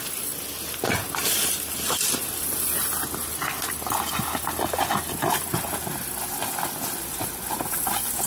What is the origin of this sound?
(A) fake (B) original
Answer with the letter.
B